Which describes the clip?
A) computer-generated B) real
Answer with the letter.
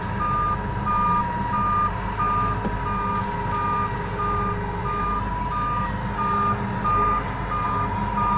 B